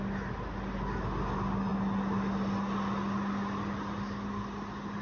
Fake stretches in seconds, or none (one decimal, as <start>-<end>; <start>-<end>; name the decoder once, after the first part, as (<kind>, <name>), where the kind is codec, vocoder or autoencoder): none